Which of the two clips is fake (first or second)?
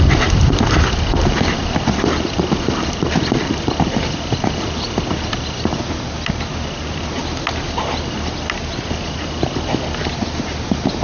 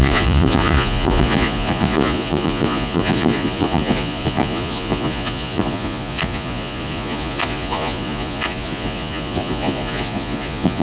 second